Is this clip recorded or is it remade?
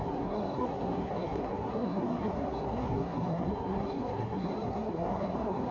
remade